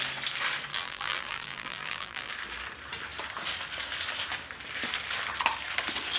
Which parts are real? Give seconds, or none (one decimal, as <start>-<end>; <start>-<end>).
0.0-0.7; 2.3-6.2